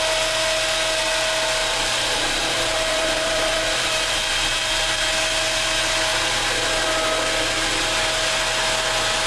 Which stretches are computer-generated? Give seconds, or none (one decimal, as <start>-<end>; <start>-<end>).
1.6-5.1